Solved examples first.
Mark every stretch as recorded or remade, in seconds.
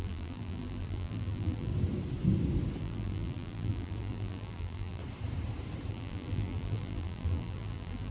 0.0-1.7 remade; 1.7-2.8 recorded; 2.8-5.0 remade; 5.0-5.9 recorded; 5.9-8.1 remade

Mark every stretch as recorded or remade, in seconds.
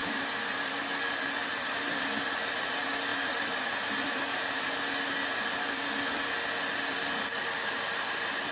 0.0-0.8 remade; 0.8-1.4 recorded; 1.4-2.0 remade; 2.0-3.1 recorded; 3.1-4.7 remade; 4.7-8.5 recorded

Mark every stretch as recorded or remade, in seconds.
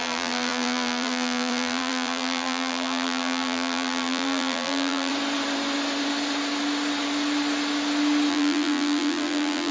0.0-5.1 remade; 5.1-8.3 recorded; 8.3-9.7 remade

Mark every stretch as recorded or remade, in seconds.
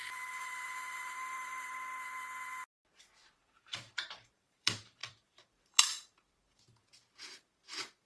0.0-1.7 remade; 1.7-3.3 recorded; 3.3-8.1 remade